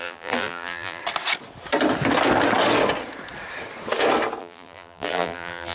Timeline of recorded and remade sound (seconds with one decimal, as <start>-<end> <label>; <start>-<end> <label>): 0.0-1.0 remade; 1.0-4.4 recorded; 4.4-5.7 remade